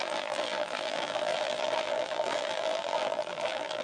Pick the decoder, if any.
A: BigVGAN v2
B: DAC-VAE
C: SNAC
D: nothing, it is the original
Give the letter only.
A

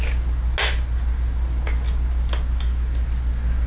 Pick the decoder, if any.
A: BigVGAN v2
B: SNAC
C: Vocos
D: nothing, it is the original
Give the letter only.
D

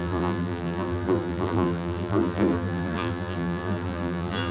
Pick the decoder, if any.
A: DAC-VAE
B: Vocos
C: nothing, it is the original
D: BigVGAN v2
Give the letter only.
D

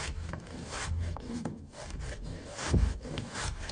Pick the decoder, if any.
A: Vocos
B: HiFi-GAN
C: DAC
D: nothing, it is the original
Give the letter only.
C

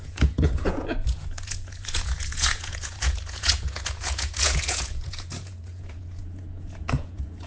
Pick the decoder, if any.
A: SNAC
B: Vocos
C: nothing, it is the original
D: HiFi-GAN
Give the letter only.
B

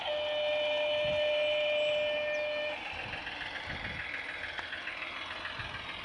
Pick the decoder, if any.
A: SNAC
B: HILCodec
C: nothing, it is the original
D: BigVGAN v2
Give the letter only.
C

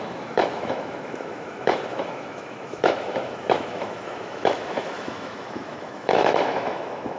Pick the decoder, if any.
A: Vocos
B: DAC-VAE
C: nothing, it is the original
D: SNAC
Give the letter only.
B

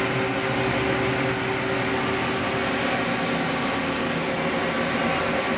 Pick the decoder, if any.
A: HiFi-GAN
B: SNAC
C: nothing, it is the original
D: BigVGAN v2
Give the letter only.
C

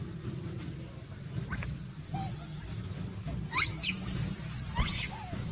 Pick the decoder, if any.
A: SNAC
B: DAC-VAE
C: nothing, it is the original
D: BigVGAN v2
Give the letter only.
C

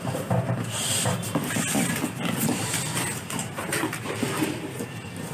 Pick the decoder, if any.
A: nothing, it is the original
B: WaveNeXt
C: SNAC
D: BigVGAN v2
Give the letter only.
A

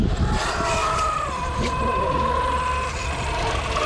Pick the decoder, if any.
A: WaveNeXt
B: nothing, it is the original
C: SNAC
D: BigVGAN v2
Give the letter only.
B